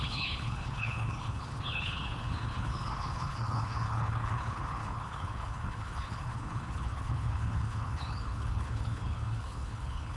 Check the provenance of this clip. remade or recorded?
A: remade